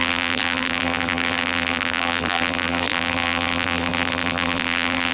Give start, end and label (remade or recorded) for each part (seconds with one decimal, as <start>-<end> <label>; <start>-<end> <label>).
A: 0.0-5.1 remade